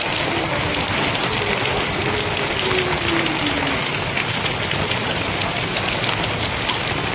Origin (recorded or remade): recorded